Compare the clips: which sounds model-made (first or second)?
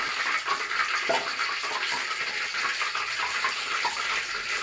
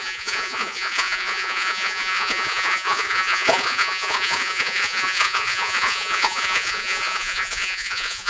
second